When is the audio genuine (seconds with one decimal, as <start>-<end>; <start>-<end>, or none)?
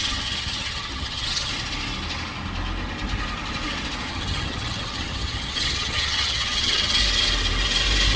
1.5-4.1; 7.0-8.2